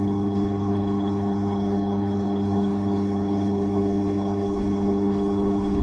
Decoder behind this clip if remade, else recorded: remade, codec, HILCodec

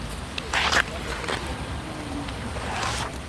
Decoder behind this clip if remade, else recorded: recorded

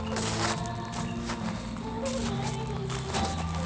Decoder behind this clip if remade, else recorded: recorded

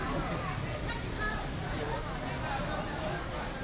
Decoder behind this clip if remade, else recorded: remade, vocoder, BigVGAN v2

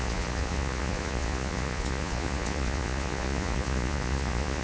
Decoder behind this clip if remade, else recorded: remade, vocoder, Vocos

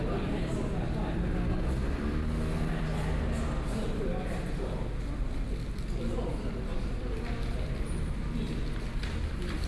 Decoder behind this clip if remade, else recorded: recorded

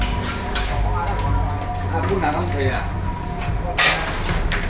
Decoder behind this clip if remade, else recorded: recorded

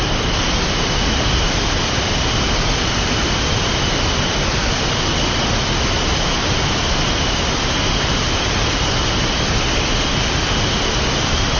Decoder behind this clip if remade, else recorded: recorded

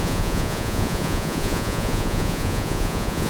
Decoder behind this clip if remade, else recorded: remade, vocoder, Vocos